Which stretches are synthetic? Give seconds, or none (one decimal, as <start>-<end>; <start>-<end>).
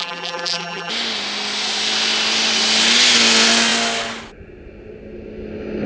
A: 0.0-0.9